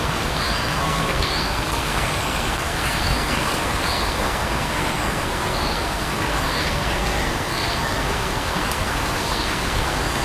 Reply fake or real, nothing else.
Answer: fake